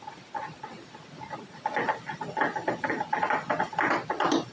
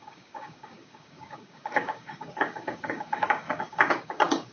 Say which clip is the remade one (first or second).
second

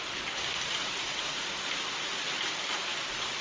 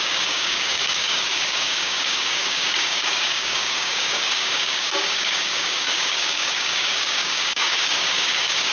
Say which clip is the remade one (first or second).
second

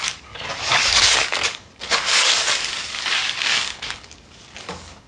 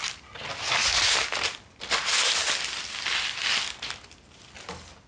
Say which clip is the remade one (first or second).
first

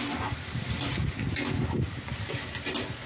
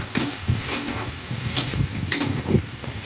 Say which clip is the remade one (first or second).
second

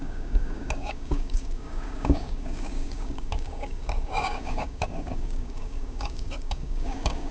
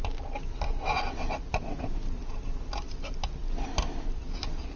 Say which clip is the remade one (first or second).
first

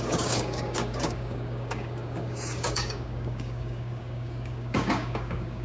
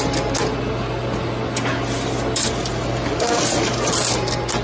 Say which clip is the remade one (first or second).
first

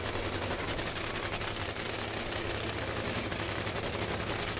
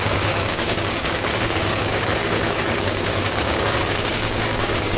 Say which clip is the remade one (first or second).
second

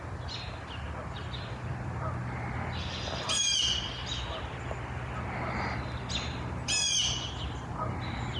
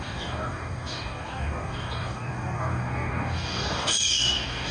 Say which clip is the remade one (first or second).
second